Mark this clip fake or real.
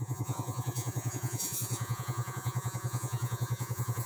fake